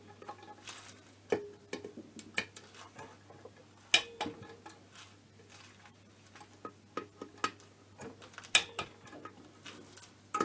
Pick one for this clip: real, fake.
real